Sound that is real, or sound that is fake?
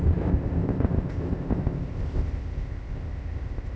fake